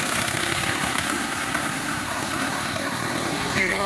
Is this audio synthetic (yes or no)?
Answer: yes